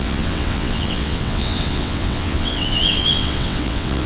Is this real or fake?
fake